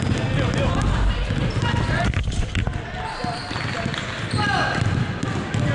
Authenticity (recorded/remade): recorded